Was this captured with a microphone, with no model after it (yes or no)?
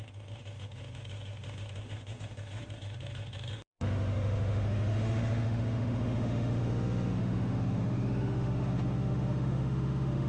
no